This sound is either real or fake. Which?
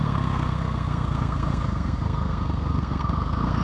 fake